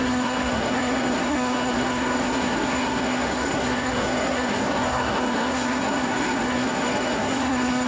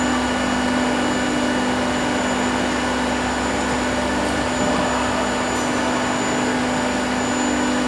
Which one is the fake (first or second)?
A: first